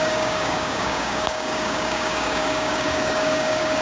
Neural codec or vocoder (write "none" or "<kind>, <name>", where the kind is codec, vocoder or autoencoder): codec, DAC